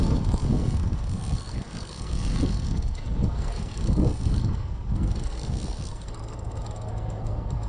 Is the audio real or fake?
fake